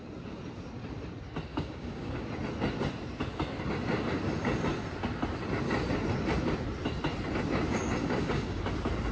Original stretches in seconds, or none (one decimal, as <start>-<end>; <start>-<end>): 0.0-1.5; 2.3-8.0; 8.6-9.1